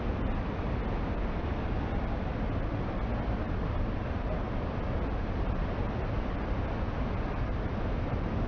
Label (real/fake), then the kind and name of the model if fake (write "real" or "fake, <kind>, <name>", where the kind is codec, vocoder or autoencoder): real